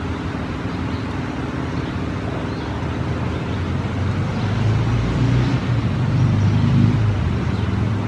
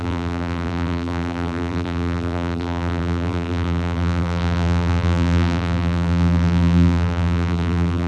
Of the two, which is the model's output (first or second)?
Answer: second